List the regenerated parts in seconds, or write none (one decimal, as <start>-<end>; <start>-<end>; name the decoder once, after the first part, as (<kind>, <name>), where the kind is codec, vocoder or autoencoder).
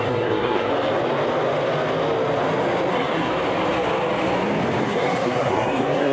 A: 0.0-0.7 (codec, SNAC); 2.9-3.3; 4.8-6.1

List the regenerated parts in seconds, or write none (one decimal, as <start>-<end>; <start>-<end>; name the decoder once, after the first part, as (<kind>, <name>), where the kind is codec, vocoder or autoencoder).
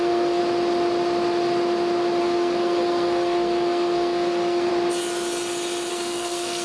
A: 0.0-0.4 (codec, SNAC); 2.2-4.7; 5.9-6.6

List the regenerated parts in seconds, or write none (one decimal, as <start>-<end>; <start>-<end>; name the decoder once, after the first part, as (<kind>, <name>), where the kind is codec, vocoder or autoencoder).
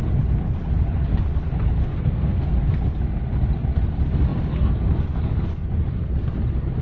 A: 1.8-2.5 (codec, SNAC)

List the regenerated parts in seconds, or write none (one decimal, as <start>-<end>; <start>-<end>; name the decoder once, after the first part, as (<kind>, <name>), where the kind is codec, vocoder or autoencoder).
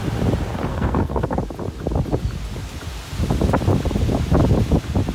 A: 0.7-1.4 (codec, SNAC)